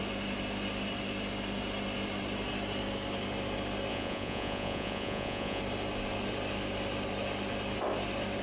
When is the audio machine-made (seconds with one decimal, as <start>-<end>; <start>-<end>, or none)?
3.9-5.6